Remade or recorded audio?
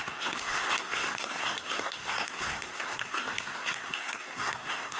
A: remade